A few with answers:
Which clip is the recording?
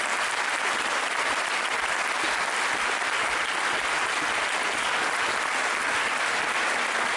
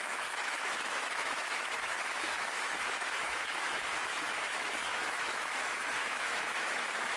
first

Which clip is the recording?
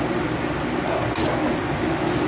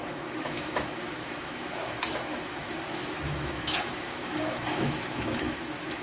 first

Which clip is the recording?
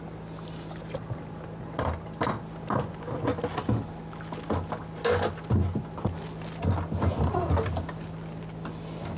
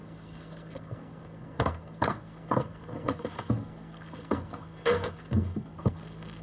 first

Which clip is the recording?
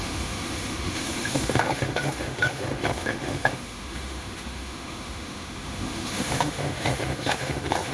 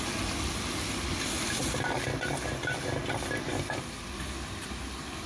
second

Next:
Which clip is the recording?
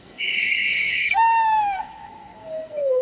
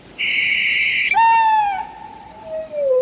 second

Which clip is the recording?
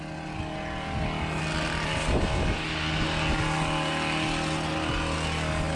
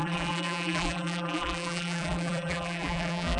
first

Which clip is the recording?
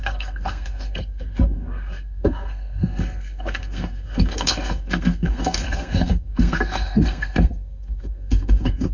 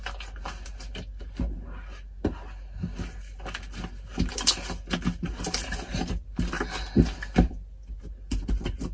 second